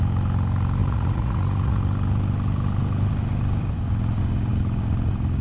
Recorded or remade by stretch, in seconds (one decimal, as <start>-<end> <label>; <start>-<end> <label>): 0.0-0.8 recorded; 0.8-1.8 remade; 1.8-5.4 recorded